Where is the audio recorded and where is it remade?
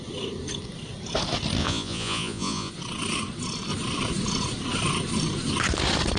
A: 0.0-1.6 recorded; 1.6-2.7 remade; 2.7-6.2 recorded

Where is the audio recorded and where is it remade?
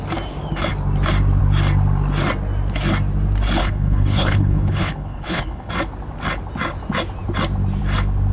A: 0.0-3.6 recorded; 3.6-5.7 remade; 5.7-8.3 recorded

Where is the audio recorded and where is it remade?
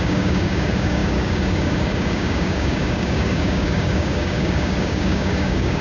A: 0.0-5.8 remade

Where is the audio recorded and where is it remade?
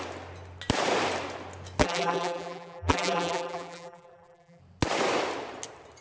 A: 0.0-1.8 recorded; 1.8-4.6 remade; 4.6-6.0 recorded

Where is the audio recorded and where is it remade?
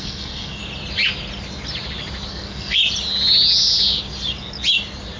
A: 0.0-0.6 remade; 0.6-2.3 recorded; 2.3-2.8 remade; 2.8-5.2 recorded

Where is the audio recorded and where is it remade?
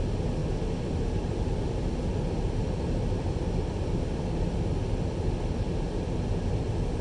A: 0.0-0.4 recorded; 0.4-4.0 remade; 4.0-7.0 recorded